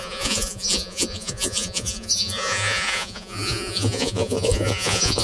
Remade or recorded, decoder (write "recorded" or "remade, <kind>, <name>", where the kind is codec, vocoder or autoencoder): remade, vocoder, Vocos